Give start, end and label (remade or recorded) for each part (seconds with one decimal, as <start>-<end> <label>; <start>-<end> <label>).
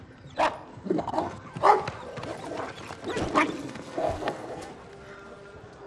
0.0-0.7 recorded; 0.7-1.5 remade; 1.5-3.6 recorded; 3.6-4.7 remade; 4.7-5.9 recorded